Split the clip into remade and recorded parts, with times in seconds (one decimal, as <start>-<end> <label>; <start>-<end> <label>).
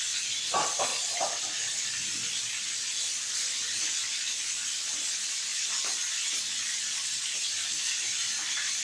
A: 0.0-8.8 recorded